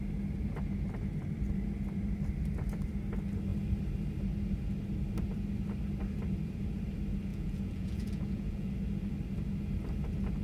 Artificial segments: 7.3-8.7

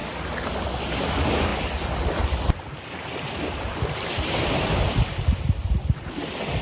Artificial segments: none

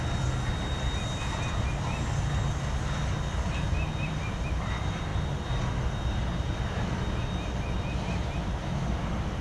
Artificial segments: none

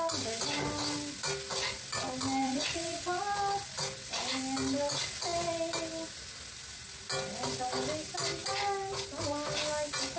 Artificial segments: 2.4-3.2